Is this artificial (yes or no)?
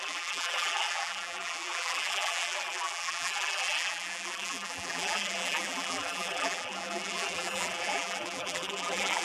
yes